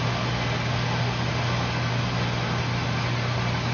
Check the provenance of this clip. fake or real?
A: real